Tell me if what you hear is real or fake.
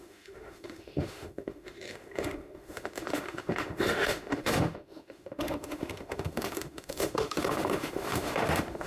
fake